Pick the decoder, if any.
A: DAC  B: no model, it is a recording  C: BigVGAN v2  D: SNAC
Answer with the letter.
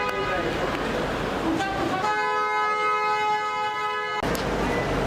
B